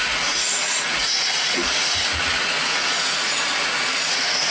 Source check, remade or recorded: remade